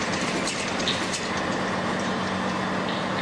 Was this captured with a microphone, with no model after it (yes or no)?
yes